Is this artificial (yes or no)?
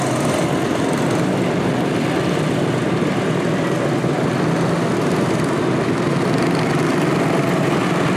no